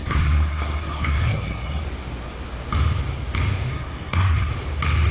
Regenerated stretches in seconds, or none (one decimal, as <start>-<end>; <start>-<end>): 0.0-1.8; 3.7-4.5